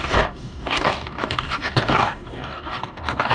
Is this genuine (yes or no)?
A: no